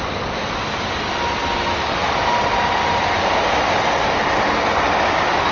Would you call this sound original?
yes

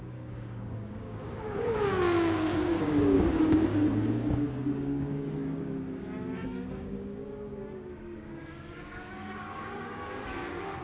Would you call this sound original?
no